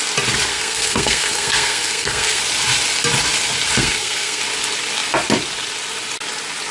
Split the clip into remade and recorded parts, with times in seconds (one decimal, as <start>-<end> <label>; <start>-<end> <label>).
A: 0.0-0.5 recorded; 0.5-2.4 remade; 2.4-3.8 recorded; 3.8-4.4 remade; 4.4-6.7 recorded